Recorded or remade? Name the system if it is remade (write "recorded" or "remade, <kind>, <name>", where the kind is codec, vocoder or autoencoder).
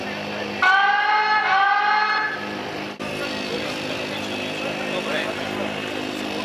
recorded